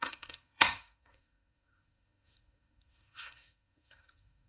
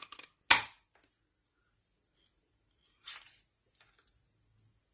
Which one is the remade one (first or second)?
first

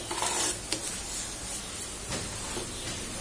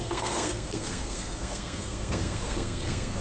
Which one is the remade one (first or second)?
second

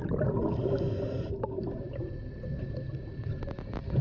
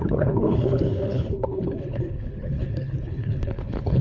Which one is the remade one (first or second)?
second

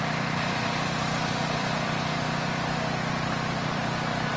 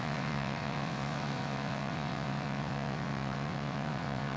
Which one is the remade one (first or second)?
second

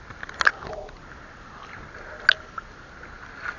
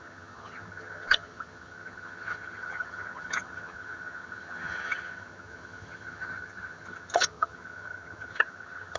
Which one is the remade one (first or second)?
second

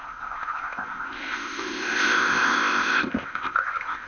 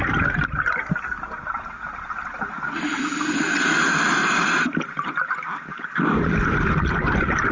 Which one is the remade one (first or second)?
first